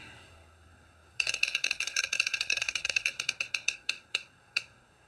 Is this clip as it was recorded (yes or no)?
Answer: no